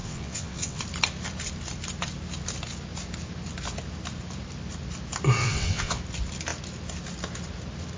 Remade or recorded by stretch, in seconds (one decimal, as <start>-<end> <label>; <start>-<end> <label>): 0.0-0.8 remade; 0.8-5.4 recorded; 5.4-6.0 remade; 6.0-8.0 recorded